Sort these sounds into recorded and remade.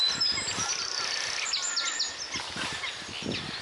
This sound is recorded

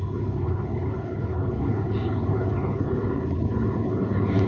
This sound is remade